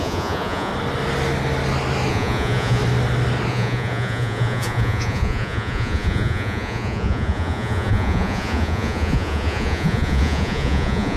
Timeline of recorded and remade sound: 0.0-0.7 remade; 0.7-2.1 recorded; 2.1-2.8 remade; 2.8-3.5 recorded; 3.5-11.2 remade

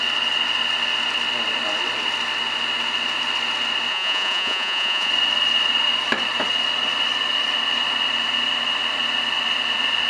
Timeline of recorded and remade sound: 0.0-3.9 recorded; 3.9-5.1 remade; 5.1-10.1 recorded

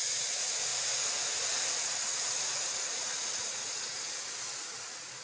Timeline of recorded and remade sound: 0.0-0.7 remade; 0.7-1.7 recorded; 1.7-5.2 remade

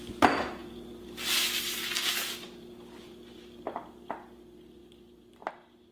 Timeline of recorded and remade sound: 0.0-5.9 recorded

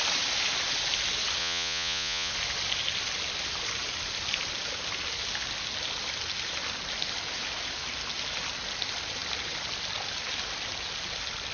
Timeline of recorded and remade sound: 0.0-1.4 recorded; 1.4-2.3 remade; 2.3-11.5 recorded

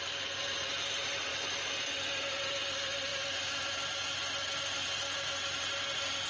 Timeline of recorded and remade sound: 0.0-6.3 recorded

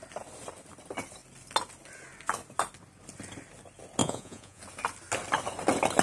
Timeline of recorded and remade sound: 0.0-4.0 recorded; 4.0-4.6 remade; 4.6-6.0 recorded